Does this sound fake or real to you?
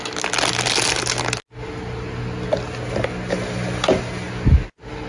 real